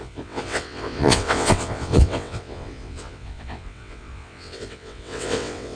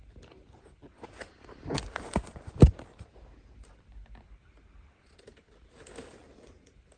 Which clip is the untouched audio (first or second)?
second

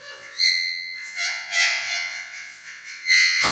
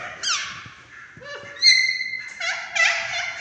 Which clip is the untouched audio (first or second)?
second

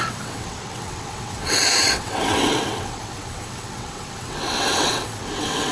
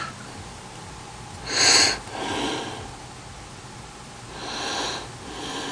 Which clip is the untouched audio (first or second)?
second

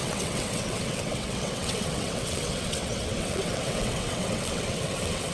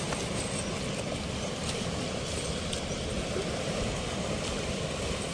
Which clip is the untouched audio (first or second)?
second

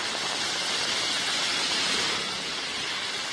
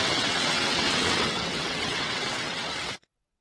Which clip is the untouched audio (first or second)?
first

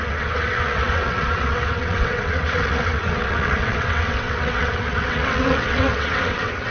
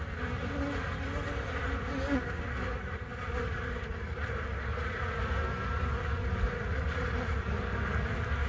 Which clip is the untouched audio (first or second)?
second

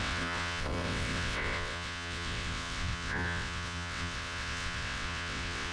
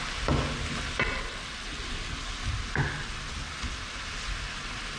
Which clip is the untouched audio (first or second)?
second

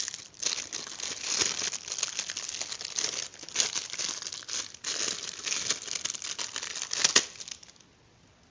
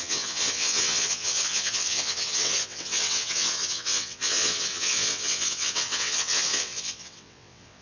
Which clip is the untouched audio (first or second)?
first